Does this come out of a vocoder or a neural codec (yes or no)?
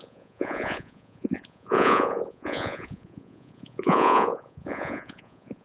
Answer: yes